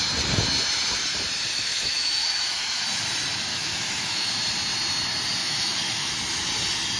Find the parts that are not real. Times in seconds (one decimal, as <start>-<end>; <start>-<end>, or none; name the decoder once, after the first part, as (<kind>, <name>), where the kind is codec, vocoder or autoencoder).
1.5-2.8 (autoencoder, DAC-VAE); 3.5-4.3; 5.4-6.1